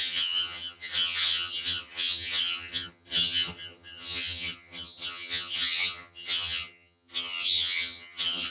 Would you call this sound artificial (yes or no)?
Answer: yes